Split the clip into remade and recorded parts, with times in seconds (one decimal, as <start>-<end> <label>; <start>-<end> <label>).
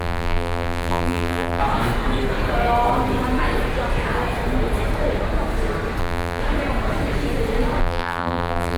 0.0-1.6 remade; 1.6-6.0 recorded; 6.0-6.4 remade; 6.4-7.8 recorded; 7.8-8.8 remade